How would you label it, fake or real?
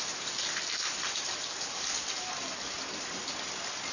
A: real